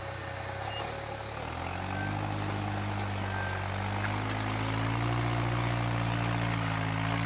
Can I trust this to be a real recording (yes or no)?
yes